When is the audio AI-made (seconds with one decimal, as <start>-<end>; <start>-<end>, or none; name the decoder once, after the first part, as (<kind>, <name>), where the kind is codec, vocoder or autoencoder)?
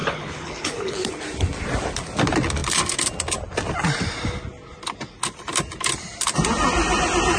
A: 0.0-1.1 (codec, HILCodec)